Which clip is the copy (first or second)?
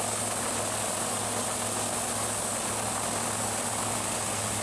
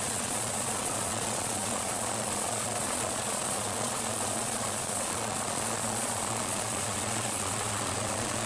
second